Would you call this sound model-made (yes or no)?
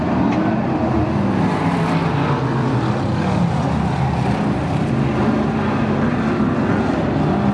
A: no